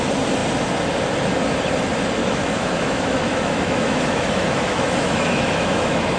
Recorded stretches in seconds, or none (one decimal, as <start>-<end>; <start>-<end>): 0.0-2.2